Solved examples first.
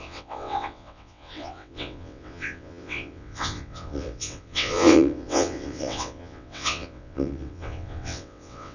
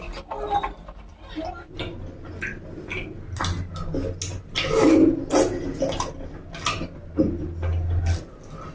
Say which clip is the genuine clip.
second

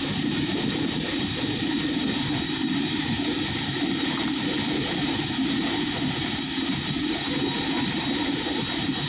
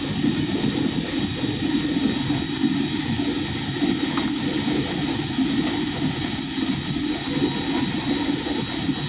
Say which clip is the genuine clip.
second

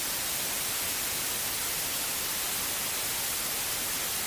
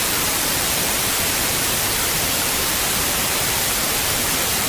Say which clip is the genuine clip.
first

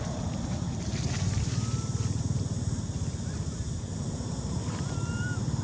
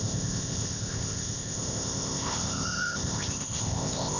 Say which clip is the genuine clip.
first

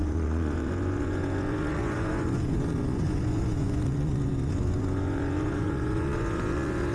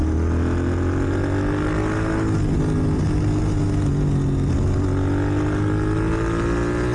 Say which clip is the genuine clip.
second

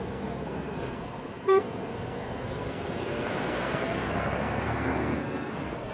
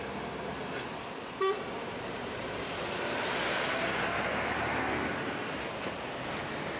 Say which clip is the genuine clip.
second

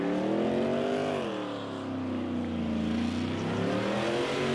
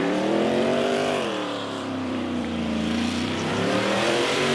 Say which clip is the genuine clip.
first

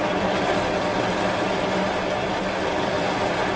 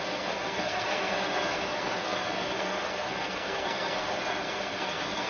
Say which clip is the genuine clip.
first